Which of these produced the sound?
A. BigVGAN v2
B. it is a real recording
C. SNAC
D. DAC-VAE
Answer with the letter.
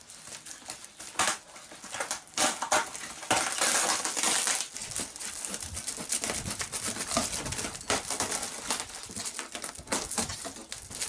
B